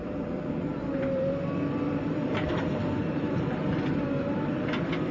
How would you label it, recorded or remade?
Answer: remade